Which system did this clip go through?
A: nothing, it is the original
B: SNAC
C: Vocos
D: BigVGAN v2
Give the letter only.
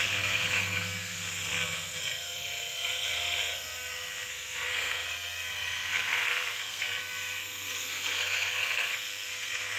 B